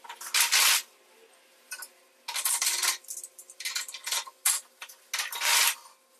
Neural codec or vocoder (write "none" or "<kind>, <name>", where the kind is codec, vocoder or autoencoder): none